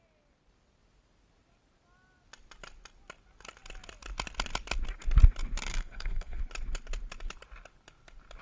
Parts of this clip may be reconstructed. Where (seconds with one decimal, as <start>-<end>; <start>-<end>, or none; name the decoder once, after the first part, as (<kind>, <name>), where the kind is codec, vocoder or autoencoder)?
5.7-6.4 (codec, SNAC)